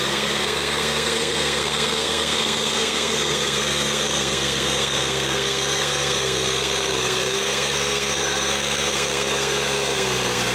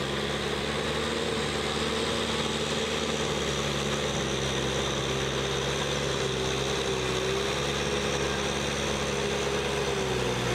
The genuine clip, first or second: second